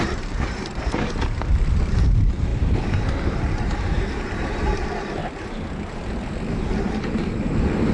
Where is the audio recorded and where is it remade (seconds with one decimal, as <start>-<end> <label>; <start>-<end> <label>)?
0.0-5.2 remade; 5.2-6.5 recorded; 6.5-7.9 remade